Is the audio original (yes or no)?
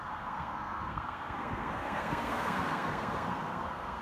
no